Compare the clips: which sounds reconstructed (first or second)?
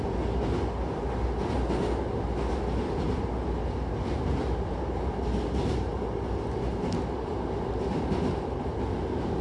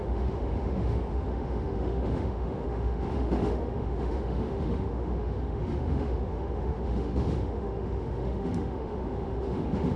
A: second